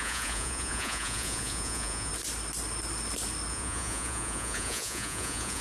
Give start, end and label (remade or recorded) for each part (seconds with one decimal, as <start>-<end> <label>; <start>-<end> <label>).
0.0-2.1 remade; 2.1-3.5 recorded; 3.5-5.6 remade